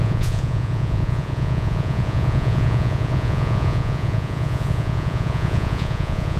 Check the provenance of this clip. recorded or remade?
remade